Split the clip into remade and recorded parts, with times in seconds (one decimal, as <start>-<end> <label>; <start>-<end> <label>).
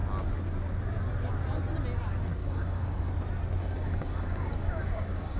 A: 0.0-2.4 recorded; 2.4-3.1 remade; 3.1-3.6 recorded; 3.6-5.4 remade